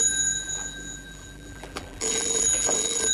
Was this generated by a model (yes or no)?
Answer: yes